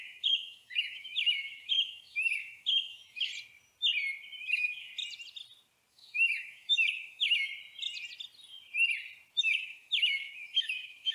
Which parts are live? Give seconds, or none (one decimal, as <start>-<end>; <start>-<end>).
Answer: 3.3-4.4; 4.9-5.9; 7.5-9.4